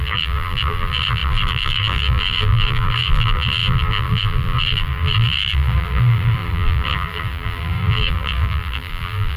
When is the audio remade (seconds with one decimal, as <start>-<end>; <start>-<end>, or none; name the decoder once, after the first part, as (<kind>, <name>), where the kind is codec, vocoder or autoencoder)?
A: 0.0-9.4 (vocoder, BigVGAN v2)